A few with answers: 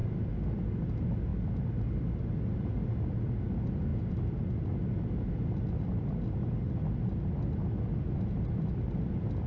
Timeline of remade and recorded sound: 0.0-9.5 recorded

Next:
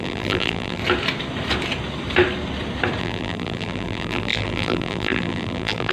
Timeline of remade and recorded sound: 0.0-0.8 remade; 0.8-3.0 recorded; 3.0-5.9 remade

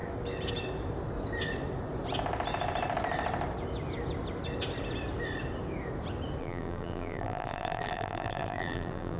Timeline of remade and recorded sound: 0.0-6.4 recorded; 6.4-9.2 remade

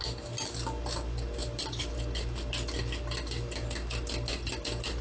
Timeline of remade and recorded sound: 0.0-1.4 recorded; 1.4-2.0 remade; 2.0-5.0 recorded